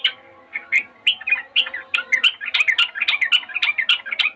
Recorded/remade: recorded